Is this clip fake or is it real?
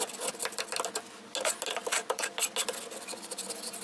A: real